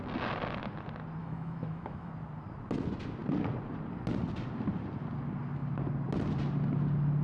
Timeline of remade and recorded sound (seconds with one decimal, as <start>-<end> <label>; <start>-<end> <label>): 0.0-1.2 recorded; 1.2-2.1 remade; 2.1-7.2 recorded